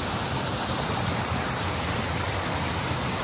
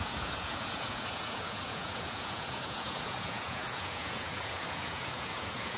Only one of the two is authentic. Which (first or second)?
first